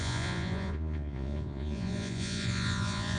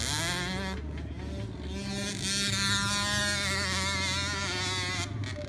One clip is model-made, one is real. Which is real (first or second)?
second